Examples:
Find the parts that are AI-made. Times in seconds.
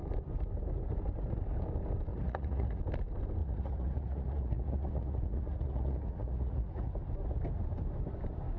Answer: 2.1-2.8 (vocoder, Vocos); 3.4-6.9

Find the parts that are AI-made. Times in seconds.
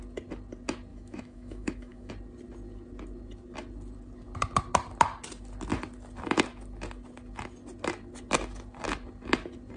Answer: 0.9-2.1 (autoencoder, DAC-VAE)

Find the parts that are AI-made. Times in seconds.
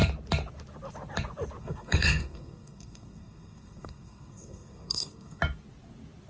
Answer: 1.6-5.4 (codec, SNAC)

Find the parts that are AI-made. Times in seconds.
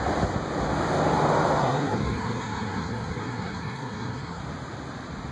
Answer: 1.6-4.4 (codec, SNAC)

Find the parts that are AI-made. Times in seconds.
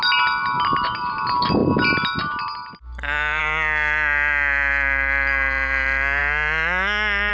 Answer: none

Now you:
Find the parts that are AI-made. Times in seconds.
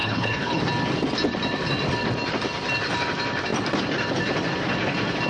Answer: 0.0-0.6 (codec, HILCodec)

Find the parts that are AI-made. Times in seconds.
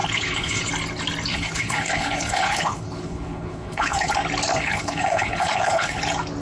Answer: 0.0-0.7 (codec, HILCodec); 1.3-4.1; 4.5-6.0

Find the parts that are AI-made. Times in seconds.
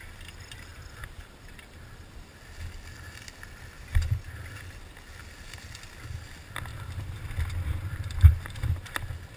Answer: 6.7-7.9 (vocoder, BigVGAN v2)